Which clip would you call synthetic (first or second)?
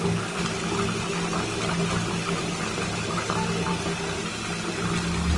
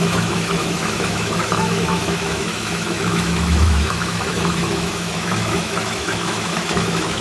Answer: second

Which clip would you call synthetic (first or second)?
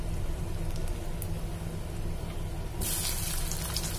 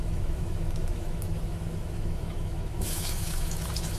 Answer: second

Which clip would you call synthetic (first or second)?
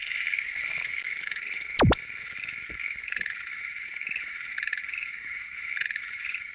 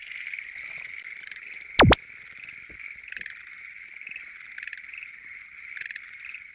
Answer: first